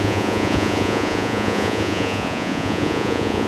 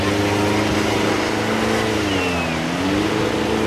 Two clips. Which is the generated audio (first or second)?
first